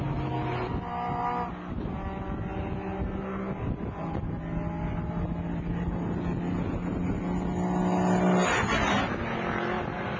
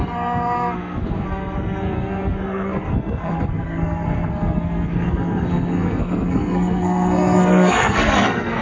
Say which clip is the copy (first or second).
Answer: second